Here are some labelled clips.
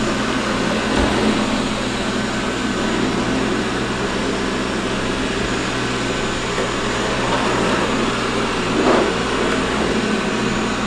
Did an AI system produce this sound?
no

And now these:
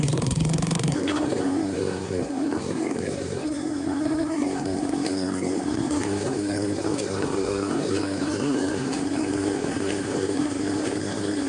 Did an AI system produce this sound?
yes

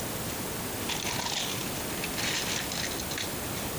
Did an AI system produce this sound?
no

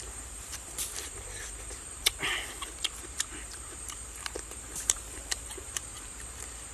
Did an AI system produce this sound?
yes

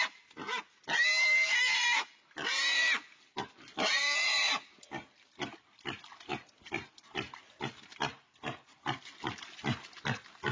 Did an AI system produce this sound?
no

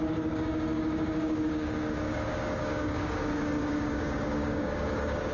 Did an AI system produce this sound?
yes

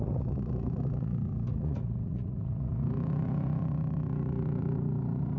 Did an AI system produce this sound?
yes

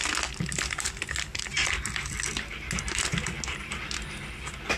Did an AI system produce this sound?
no